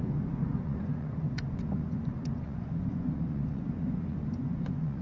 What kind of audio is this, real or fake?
fake